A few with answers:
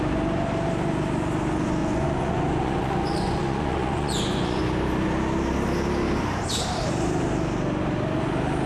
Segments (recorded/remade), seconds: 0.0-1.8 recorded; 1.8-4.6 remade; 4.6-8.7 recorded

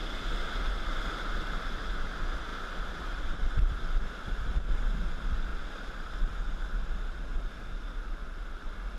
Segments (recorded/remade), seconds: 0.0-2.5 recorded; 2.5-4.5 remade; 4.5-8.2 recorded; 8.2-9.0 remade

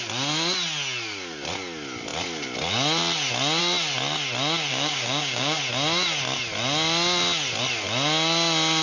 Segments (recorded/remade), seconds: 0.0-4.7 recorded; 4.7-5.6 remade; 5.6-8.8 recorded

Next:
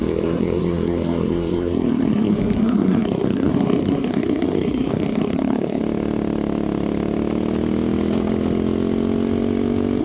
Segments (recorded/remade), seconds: 0.0-5.8 remade; 5.8-10.0 recorded

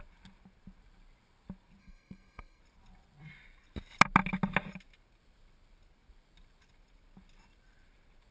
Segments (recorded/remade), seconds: 0.0-1.8 recorded; 1.8-2.6 remade; 2.6-8.3 recorded

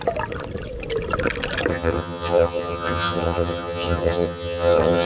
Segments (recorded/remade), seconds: 0.0-1.7 recorded; 1.7-5.1 remade

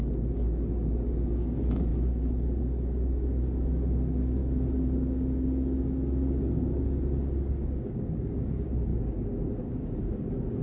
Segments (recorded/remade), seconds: 0.0-8.9 remade; 8.9-9.5 recorded; 9.5-10.6 remade